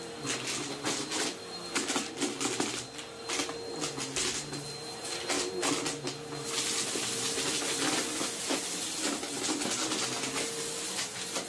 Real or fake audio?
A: real